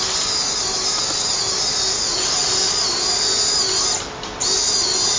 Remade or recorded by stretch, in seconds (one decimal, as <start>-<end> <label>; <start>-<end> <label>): 0.0-5.2 recorded